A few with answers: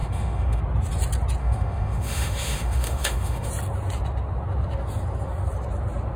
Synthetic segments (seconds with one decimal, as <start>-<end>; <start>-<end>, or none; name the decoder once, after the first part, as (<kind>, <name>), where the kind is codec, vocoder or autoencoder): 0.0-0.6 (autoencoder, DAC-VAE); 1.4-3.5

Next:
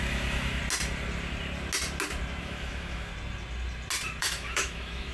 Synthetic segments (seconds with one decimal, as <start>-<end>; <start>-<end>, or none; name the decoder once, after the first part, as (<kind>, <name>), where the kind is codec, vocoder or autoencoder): 0.0-0.6 (autoencoder, DAC-VAE); 2.4-3.1; 4.2-5.1

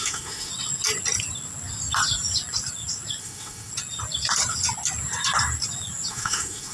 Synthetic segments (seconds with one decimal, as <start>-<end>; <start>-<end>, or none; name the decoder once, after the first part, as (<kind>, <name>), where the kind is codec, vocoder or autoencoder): 0.0-0.5 (autoencoder, DAC-VAE); 3.2-3.7; 6.1-6.7